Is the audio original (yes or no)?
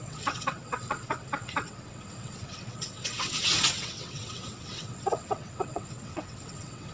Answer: no